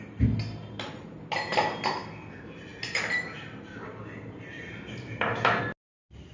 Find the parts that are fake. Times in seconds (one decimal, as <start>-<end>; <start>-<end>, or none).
none